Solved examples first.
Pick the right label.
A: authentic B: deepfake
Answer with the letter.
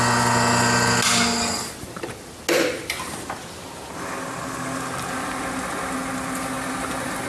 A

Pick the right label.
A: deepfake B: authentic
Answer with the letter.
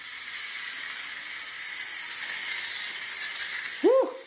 B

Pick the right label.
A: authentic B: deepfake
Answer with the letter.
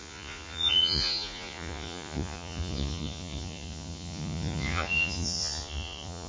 B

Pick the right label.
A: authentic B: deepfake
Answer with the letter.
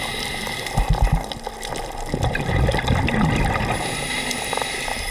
A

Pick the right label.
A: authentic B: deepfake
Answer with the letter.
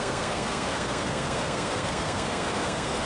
B